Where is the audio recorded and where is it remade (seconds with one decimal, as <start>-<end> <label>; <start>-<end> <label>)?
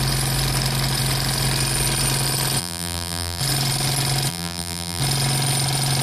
0.0-2.6 recorded; 2.6-3.4 remade; 3.4-4.3 recorded; 4.3-5.0 remade; 5.0-6.0 recorded